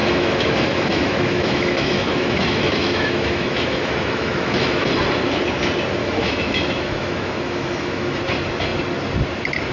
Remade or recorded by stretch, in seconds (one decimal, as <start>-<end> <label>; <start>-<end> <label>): 0.0-4.9 remade; 4.9-6.0 recorded; 6.0-8.2 remade; 8.2-9.7 recorded